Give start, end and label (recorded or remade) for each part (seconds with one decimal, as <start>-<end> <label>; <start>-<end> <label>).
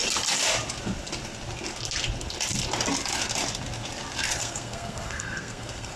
0.0-4.4 recorded; 4.4-6.0 remade